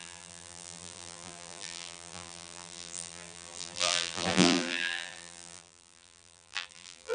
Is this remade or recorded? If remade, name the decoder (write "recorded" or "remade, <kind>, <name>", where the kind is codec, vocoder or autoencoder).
remade, vocoder, BigVGAN v2